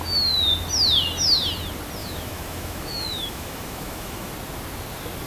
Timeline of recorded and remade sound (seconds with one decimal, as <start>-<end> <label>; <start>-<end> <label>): 0.0-2.0 recorded; 2.0-4.3 remade; 4.3-5.3 recorded